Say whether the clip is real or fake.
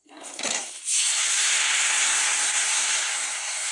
fake